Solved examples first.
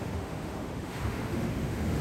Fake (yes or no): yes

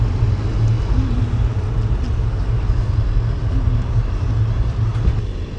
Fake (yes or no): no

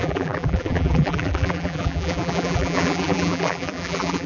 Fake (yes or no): yes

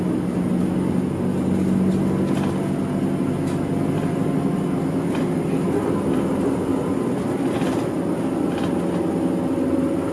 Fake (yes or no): no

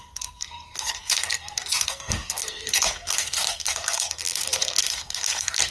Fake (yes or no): yes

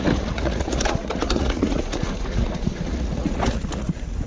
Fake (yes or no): yes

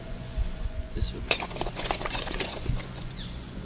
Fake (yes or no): yes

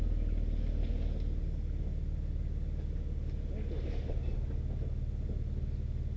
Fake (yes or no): no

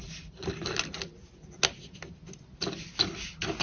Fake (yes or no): no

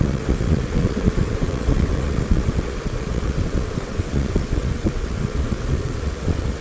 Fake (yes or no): yes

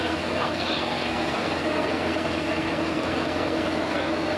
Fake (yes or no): yes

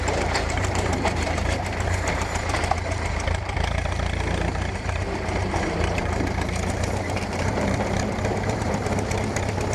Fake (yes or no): yes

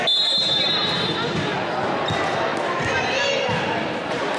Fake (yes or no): no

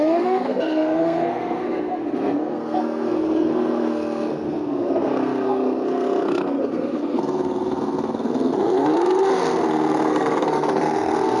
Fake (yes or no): yes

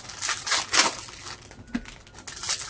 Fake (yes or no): no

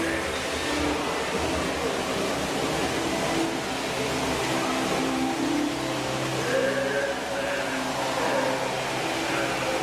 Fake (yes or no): no